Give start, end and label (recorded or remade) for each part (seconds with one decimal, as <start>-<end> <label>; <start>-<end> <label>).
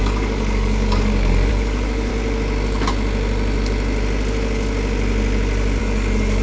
0.0-2.1 remade; 2.1-5.8 recorded; 5.8-6.4 remade